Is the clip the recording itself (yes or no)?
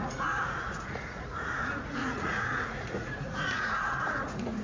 no